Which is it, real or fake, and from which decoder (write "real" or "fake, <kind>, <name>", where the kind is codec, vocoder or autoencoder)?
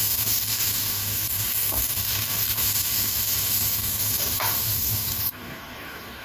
fake, codec, DAC